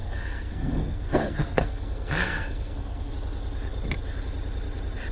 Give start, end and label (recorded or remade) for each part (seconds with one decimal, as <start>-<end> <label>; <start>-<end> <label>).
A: 0.0-3.1 remade; 3.1-5.1 recorded